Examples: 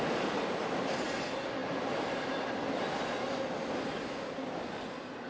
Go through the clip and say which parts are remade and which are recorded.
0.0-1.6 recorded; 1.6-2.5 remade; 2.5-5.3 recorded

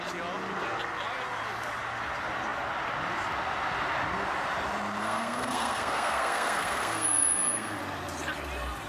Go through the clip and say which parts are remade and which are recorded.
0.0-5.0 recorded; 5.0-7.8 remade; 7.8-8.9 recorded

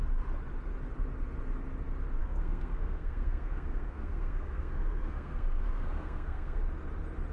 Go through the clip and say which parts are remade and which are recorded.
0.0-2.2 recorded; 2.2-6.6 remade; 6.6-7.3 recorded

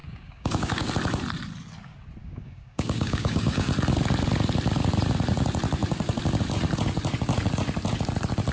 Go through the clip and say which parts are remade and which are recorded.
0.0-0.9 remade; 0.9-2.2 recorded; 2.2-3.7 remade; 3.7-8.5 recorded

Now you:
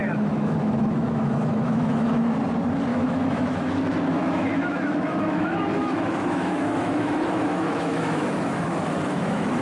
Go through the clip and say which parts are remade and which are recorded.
0.0-2.4 remade; 2.4-2.9 recorded; 2.9-3.7 remade; 3.7-4.2 recorded; 4.2-9.6 remade

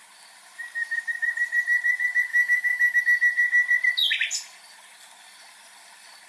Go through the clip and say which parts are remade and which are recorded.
0.0-2.3 recorded; 2.3-3.0 remade; 3.0-6.3 recorded